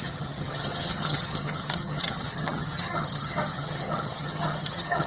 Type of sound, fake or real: fake